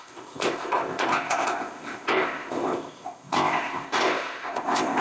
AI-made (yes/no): yes